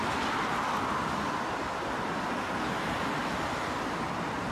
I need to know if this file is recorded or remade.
recorded